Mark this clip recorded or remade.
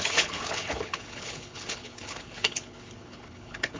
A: remade